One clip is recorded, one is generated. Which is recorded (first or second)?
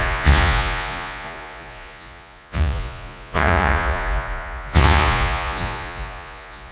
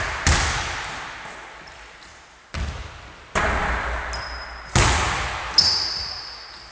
second